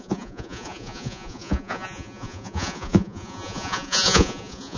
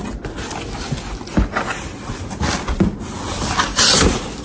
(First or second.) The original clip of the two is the second